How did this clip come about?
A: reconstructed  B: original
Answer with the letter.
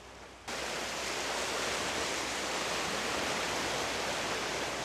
B